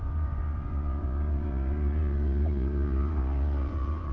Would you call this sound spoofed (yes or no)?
yes